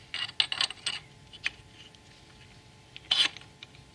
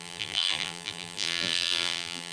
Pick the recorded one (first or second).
first